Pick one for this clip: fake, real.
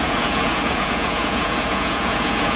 fake